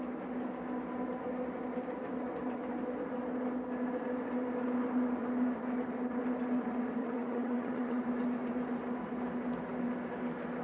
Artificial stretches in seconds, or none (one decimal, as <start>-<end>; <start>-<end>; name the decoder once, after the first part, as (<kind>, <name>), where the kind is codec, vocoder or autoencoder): 7.0-8.0 (vocoder, HiFi-GAN)